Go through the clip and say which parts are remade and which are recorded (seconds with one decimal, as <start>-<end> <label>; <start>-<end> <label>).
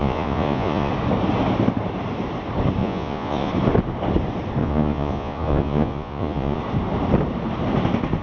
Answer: 0.0-0.9 remade; 0.9-2.8 recorded; 2.8-3.5 remade; 3.5-4.6 recorded; 4.6-6.6 remade; 6.6-8.2 recorded